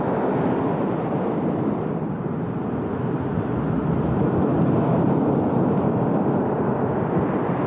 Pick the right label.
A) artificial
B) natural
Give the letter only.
B